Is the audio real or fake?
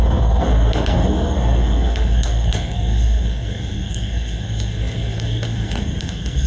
fake